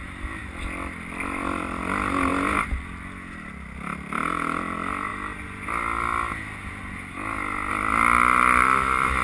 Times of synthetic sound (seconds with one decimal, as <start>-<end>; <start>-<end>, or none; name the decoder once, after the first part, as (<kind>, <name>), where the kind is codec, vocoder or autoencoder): none